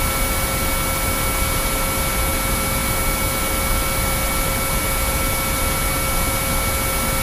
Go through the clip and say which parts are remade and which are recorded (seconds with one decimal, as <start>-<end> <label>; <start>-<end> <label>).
0.0-7.2 recorded